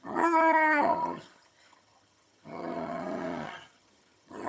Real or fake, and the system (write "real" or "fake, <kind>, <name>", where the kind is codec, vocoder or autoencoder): fake, vocoder, HiFi-GAN